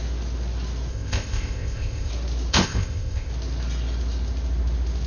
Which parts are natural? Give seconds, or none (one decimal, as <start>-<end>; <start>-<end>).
0.0-0.9; 2.1-2.5; 3.3-5.1